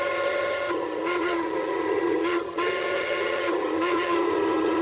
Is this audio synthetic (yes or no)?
yes